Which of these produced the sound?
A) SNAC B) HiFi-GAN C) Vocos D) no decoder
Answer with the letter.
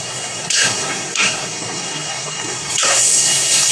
A